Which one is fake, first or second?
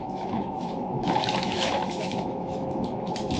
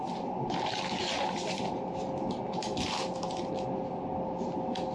first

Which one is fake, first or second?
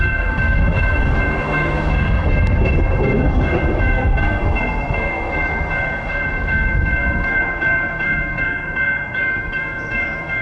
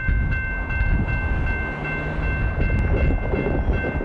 first